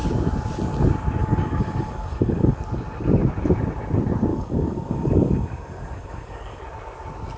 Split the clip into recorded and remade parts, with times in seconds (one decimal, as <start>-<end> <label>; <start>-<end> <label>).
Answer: 0.0-1.2 recorded; 1.2-2.6 remade; 2.6-4.3 recorded; 4.3-6.6 remade; 6.6-7.4 recorded